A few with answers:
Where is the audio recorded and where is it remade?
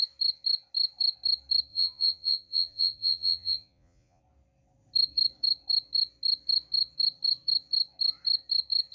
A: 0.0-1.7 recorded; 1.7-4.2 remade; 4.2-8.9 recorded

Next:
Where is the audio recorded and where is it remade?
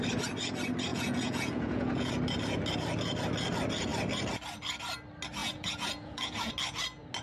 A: 0.0-0.9 recorded; 0.9-2.1 remade; 2.1-5.4 recorded; 5.4-6.5 remade; 6.5-7.2 recorded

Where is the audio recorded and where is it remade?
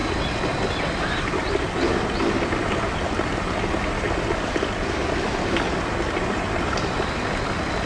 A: 0.0-7.9 recorded